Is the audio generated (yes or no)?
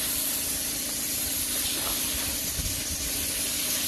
no